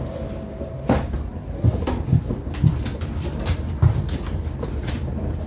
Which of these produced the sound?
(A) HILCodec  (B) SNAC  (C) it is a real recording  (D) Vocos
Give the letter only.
C